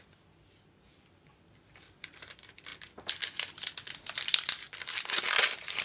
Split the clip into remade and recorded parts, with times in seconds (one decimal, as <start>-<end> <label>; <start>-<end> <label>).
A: 0.0-5.8 recorded